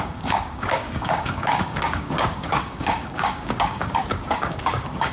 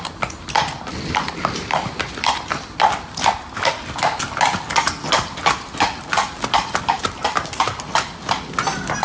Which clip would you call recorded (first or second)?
second